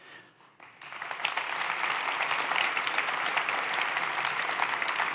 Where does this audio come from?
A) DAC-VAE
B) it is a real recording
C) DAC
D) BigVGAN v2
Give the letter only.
B